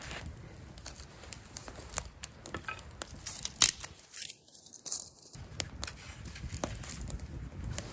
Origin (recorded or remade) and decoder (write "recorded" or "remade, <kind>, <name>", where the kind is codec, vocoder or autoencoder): recorded